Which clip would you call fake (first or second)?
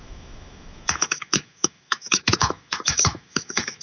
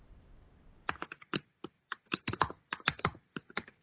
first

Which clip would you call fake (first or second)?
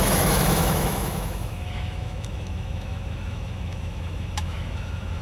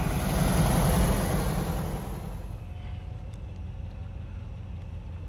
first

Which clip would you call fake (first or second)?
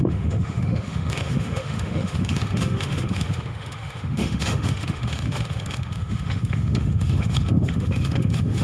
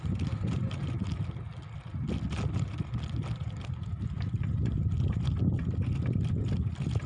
first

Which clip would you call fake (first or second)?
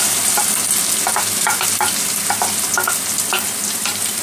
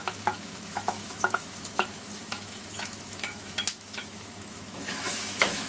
second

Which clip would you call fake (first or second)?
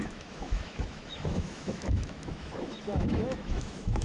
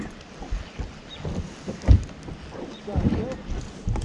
first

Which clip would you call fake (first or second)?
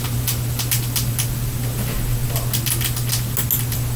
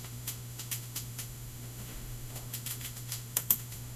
second